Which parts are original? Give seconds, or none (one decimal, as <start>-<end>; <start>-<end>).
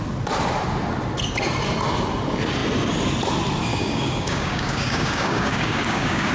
0.0-3.7